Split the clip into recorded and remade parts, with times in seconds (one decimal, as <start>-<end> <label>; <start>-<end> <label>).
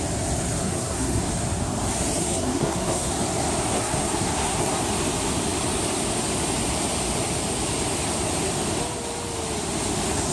0.0-0.6 recorded; 0.6-1.3 remade; 1.3-2.2 recorded; 2.2-3.1 remade; 3.1-3.7 recorded; 3.7-4.8 remade; 4.8-10.3 recorded